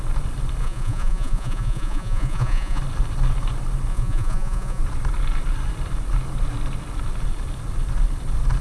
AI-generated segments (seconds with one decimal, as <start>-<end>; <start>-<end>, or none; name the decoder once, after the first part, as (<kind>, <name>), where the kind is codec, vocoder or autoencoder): 0.6-2.8 (vocoder, Vocos); 3.9-4.8